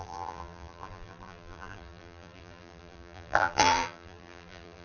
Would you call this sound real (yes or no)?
no